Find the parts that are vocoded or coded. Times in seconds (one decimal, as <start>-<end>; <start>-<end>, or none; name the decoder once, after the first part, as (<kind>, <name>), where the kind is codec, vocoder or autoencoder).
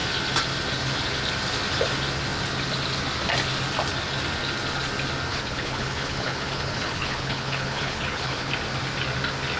5.3-8.5 (codec, HILCodec)